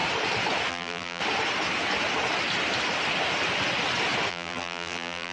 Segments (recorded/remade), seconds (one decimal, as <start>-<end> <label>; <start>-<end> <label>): 0.0-0.7 recorded; 0.7-1.2 remade; 1.2-4.3 recorded; 4.3-5.3 remade